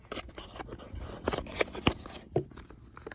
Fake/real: real